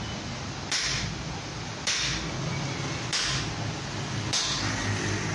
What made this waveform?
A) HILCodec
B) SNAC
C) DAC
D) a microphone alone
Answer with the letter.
D